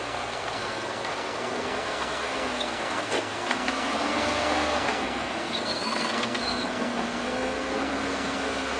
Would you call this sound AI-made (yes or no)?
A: yes